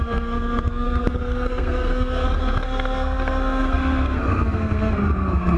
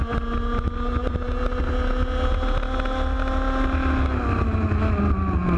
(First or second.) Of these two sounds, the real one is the second